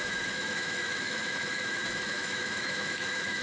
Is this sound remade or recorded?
remade